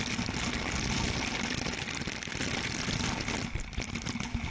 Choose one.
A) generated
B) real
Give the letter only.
B